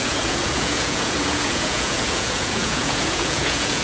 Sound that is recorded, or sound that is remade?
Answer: remade